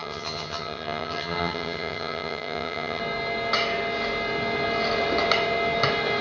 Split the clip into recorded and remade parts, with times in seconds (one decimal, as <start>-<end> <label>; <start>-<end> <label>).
0.0-3.0 remade; 3.0-6.2 recorded